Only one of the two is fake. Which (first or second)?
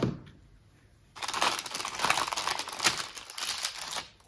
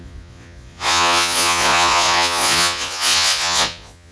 second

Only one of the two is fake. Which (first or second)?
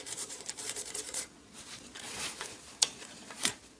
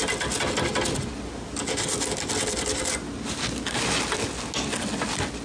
first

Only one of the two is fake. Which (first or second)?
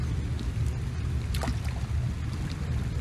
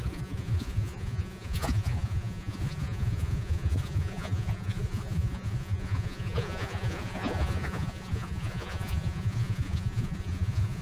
second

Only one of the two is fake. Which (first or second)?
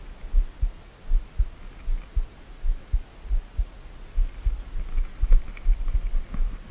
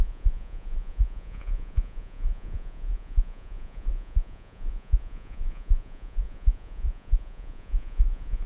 second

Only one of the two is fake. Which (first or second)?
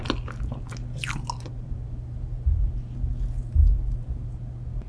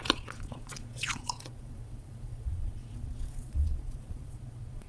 second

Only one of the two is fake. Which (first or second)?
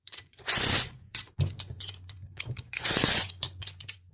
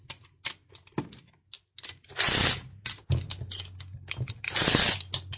first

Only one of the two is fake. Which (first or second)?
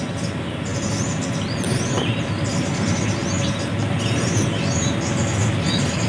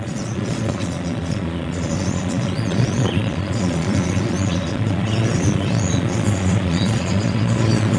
second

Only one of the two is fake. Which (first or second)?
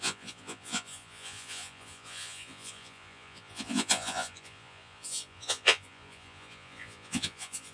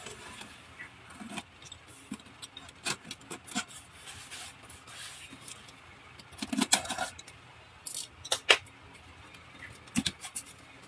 first